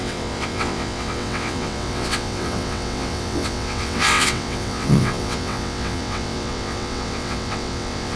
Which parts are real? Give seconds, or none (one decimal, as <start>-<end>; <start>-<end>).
none